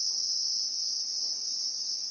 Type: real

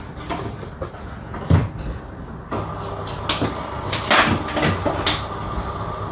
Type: real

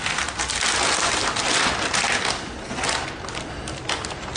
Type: real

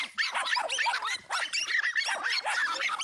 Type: real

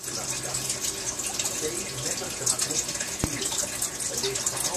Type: real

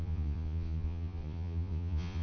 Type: fake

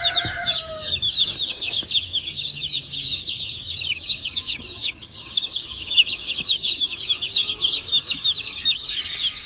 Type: fake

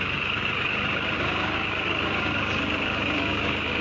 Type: fake